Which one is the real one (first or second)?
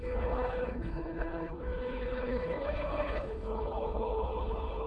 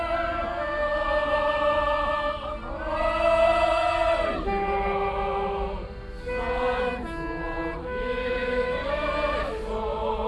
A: second